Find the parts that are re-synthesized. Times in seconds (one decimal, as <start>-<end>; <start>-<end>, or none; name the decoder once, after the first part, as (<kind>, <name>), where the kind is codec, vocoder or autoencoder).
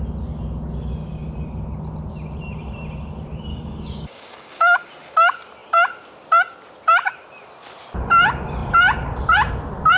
3.5-4.9 (codec, DAC)